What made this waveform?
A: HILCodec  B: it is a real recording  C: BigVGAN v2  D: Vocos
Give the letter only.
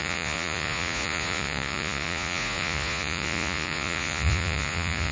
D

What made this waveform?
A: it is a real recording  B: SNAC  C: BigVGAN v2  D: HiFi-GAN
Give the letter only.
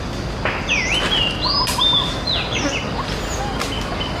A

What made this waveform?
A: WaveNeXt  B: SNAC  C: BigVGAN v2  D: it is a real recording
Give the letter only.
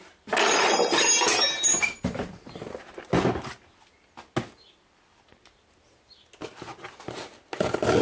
D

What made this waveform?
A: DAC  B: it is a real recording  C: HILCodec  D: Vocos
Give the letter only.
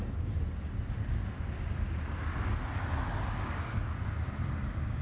B